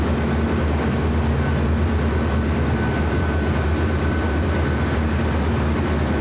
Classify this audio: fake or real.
real